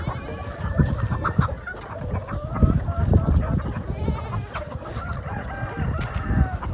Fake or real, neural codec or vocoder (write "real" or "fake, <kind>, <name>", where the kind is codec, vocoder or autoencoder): real